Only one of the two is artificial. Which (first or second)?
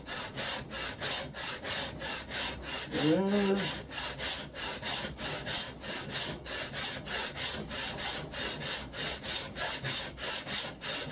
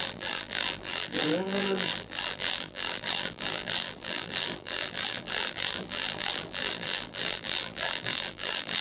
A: second